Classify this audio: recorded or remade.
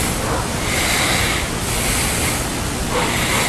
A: recorded